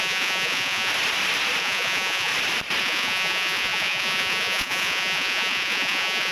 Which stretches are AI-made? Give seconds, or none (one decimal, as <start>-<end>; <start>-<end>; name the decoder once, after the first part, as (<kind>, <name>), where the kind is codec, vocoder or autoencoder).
0.0-0.9 (vocoder, Vocos); 1.6-2.3; 2.8-6.3